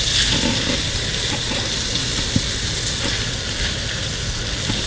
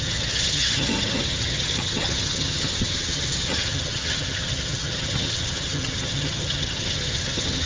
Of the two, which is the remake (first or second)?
second